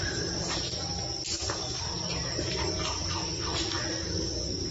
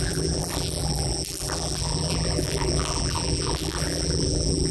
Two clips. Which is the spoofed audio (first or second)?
second